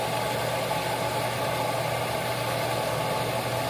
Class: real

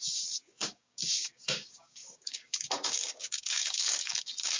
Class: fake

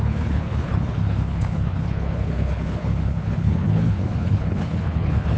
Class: fake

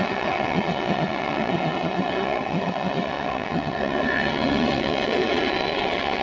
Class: fake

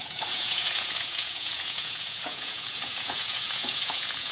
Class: fake